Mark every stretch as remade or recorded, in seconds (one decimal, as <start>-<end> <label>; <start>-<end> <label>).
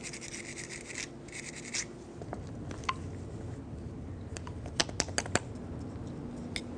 0.0-6.8 recorded